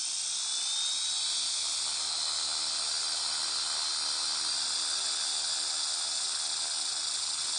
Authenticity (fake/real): real